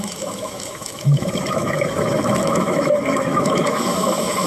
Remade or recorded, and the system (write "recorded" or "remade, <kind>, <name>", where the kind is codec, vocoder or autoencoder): remade, autoencoder, DAC-VAE